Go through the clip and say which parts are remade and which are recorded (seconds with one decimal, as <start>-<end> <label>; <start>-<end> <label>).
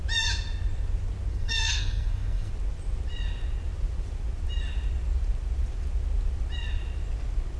0.0-1.3 recorded; 1.3-2.5 remade; 2.5-7.6 recorded